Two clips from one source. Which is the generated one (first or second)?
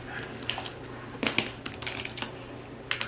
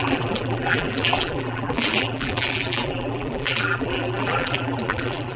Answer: second